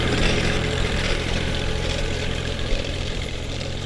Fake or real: fake